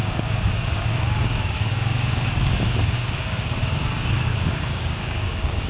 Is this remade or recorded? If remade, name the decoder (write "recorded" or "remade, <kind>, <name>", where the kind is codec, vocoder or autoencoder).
remade, codec, DAC